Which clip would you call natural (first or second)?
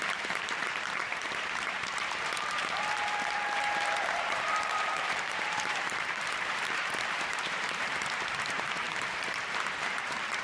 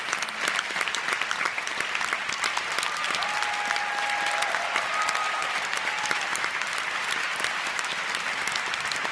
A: second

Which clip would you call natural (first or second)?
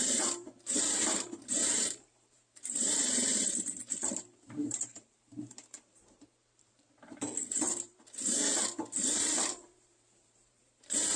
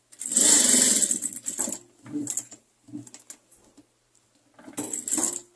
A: second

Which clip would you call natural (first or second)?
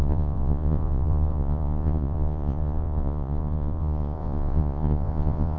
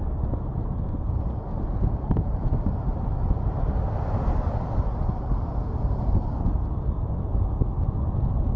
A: second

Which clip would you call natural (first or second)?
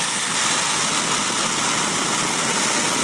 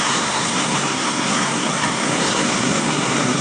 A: first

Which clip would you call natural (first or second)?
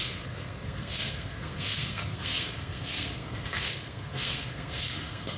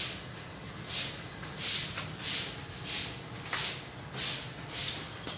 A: second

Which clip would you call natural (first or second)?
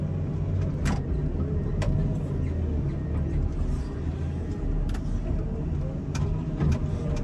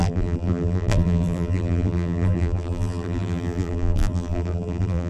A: first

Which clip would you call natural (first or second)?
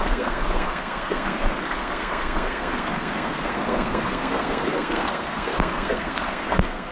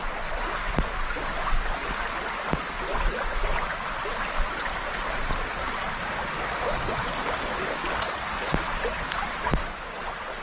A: second